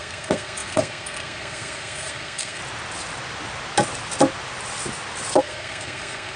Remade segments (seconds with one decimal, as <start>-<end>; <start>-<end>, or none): 0.0-2.6; 5.4-6.4

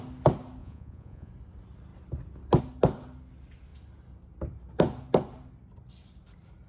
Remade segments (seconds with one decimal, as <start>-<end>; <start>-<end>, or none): 0.6-1.3

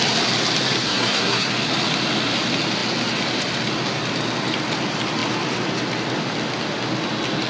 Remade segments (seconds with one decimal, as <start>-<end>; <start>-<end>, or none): 0.8-1.5

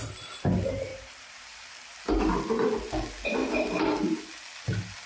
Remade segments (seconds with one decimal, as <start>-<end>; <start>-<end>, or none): 0.9-1.7; 3.4-4.2

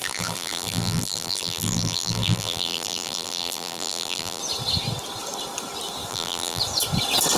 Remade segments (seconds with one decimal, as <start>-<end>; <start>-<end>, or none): 0.0-4.4; 6.1-6.6

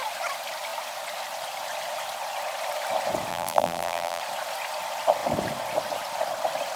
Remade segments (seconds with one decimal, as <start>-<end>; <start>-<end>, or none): 3.3-4.2

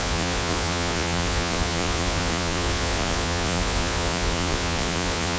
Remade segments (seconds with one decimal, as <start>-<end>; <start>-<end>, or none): 0.0-5.4